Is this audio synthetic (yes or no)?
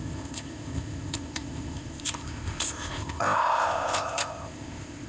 yes